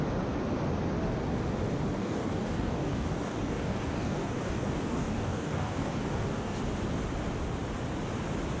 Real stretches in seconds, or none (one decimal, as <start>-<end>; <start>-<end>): 0.0-2.0; 6.6-8.6